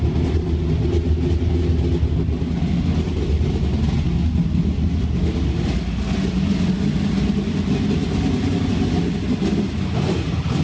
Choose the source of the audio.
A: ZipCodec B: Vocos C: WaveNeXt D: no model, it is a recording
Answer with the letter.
D